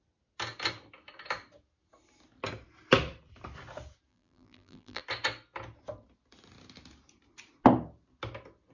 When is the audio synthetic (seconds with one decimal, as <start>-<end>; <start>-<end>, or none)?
4.1-5.0